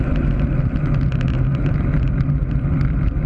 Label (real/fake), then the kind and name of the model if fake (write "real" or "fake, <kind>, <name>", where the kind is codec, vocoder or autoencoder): real